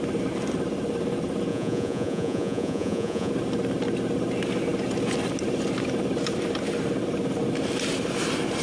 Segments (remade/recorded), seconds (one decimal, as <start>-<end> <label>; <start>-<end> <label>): 0.0-1.5 recorded; 1.5-3.3 remade; 3.3-8.6 recorded